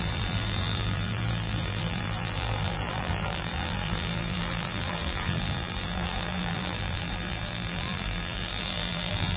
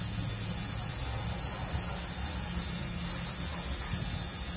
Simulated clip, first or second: first